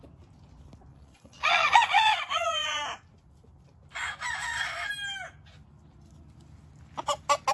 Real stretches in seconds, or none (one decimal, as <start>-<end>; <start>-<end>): 0.0-0.9; 2.8-4.4; 4.9-7.5